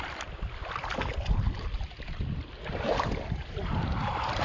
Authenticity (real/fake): fake